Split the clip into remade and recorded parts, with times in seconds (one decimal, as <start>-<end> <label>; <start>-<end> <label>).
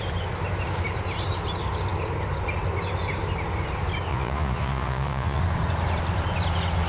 0.0-4.1 recorded; 4.1-5.4 remade; 5.4-6.9 recorded